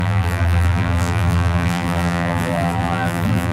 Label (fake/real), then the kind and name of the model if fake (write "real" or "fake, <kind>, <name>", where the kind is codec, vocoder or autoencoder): fake, vocoder, BigVGAN v2